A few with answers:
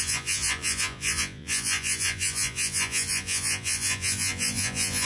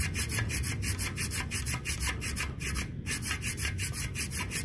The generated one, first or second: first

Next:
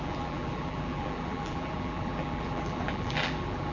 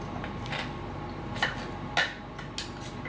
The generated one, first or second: first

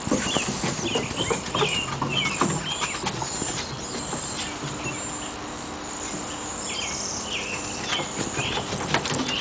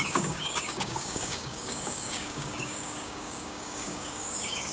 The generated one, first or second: second